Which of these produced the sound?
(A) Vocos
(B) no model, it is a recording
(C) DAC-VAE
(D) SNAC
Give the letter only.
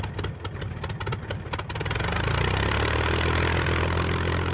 B